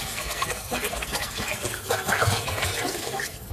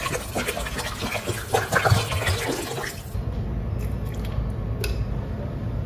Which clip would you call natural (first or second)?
second